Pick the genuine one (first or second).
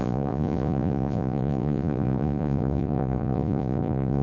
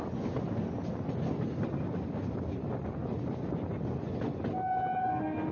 second